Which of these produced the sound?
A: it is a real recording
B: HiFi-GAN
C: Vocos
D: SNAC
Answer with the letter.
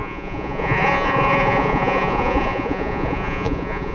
C